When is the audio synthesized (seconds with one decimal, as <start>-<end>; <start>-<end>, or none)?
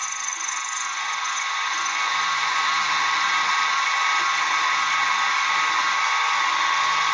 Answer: 0.0-2.6